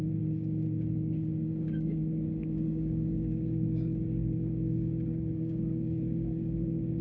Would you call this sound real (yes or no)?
no